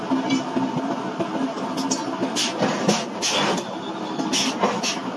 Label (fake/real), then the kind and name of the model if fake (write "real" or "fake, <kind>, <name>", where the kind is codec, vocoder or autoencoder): real